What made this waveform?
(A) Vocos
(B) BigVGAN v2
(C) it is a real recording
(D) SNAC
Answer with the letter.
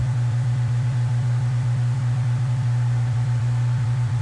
B